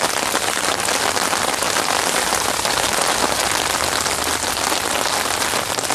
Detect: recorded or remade recorded